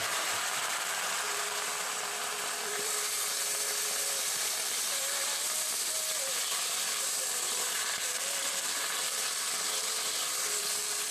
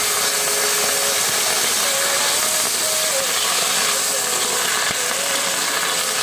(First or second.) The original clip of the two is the second